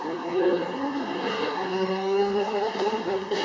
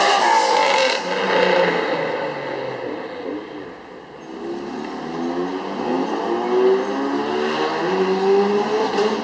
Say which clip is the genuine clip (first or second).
second